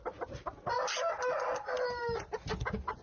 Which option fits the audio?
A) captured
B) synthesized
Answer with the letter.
A